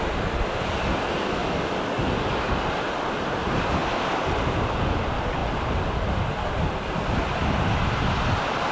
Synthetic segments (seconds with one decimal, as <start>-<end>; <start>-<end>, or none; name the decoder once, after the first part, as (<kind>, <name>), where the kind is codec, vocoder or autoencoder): 5.4-7.9 (vocoder, BigVGAN v2)